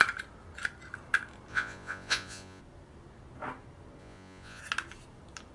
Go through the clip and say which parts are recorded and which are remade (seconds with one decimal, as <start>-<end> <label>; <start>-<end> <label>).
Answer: 0.0-1.5 recorded; 1.5-2.6 remade; 2.6-4.0 recorded; 4.0-4.6 remade; 4.6-5.5 recorded